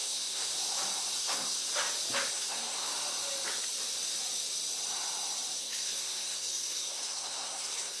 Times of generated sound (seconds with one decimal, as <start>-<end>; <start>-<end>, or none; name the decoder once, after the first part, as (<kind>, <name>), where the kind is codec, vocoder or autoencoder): 0.0-0.5 (codec, SNAC); 1.2-1.7; 2.3-2.9; 5.6-8.0